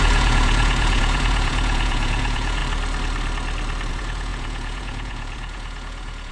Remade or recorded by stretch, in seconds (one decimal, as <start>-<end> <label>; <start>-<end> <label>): 0.0-2.6 remade; 2.6-3.9 recorded; 3.9-6.3 remade

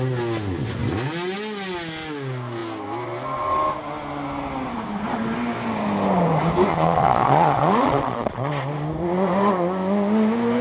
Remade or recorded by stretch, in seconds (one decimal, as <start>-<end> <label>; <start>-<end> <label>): 0.0-6.7 recorded; 6.7-8.5 remade; 8.5-10.6 recorded

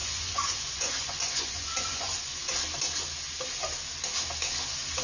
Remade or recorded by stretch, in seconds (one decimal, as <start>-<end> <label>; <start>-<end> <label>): 0.0-2.5 remade; 2.5-5.0 recorded

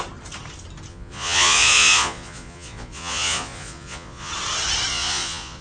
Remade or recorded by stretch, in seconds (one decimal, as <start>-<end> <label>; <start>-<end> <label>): 0.0-0.9 recorded; 0.9-4.3 remade; 4.3-4.9 recorded; 4.9-5.6 remade

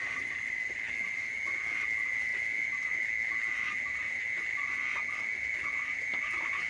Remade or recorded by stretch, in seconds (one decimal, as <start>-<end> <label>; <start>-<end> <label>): 0.0-4.5 recorded; 4.5-5.1 remade; 5.1-6.7 recorded